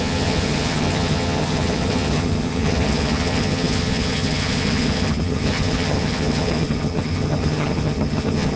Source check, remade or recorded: remade